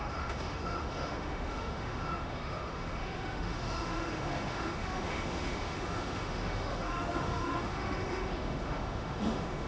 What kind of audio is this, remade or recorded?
remade